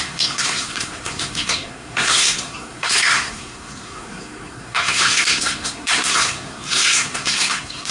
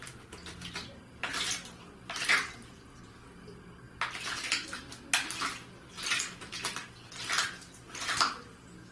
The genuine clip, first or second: second